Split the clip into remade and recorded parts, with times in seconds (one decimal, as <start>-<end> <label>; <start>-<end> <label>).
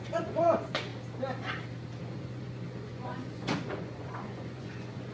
0.0-0.9 remade; 0.9-2.0 recorded; 2.0-5.1 remade